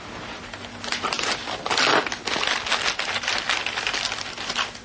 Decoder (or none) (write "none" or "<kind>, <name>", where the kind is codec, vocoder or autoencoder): none